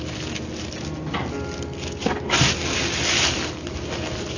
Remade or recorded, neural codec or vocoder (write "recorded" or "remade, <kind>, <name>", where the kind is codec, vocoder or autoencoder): recorded